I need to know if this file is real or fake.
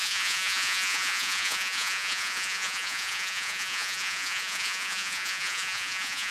fake